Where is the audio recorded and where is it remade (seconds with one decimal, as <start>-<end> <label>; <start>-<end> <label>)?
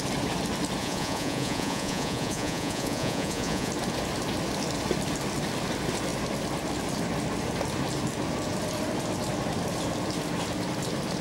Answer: 0.0-0.8 recorded; 0.8-3.7 remade; 3.7-11.2 recorded